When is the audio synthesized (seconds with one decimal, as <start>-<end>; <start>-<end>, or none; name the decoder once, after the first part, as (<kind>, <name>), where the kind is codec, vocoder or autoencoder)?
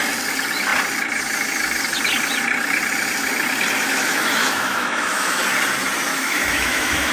3.8-5.4 (autoencoder, DAC-VAE); 6.1-7.1